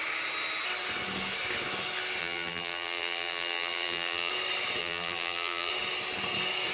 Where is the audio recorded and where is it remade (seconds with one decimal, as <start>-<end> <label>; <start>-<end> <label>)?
0.0-2.2 recorded; 2.2-4.3 remade; 4.3-4.8 recorded; 4.8-5.7 remade; 5.7-6.7 recorded